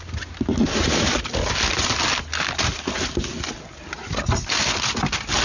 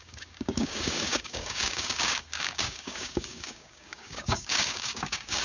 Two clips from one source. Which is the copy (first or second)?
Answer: second